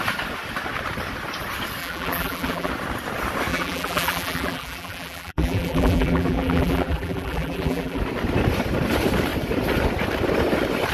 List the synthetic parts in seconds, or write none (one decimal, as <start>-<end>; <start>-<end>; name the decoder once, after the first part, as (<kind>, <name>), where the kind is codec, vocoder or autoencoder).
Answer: 1.8-2.7 (vocoder, BigVGAN v2); 3.5-8.0